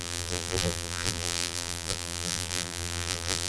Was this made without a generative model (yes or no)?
no